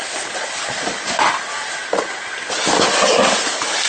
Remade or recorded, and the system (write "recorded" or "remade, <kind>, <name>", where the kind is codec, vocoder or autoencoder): recorded